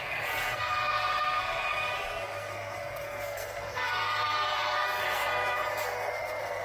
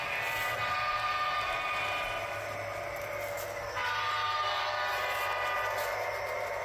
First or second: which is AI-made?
first